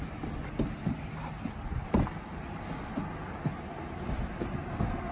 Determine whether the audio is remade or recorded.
recorded